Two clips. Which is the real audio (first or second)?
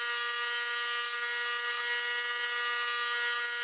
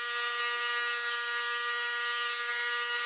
first